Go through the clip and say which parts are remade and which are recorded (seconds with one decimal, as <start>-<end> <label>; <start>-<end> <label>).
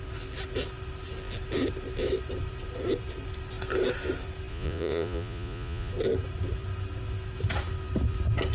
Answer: 0.0-4.5 recorded; 4.5-5.9 remade; 5.9-8.5 recorded